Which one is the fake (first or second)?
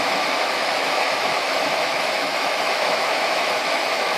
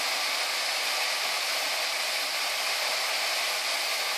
first